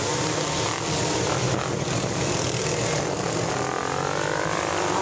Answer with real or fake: real